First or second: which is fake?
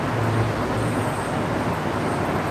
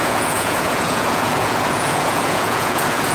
second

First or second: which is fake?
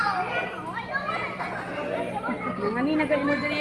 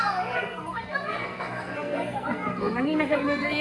second